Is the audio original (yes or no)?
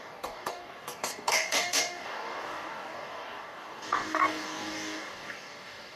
no